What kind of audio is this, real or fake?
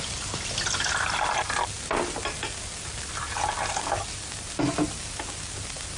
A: real